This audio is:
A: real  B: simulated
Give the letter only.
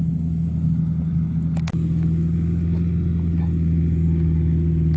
A